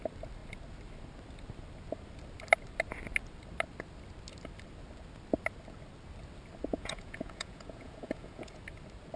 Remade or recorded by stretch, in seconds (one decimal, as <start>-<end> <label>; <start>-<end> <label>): 0.0-6.7 recorded; 6.7-8.6 remade; 8.6-9.2 recorded